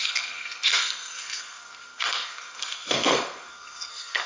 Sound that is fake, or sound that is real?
fake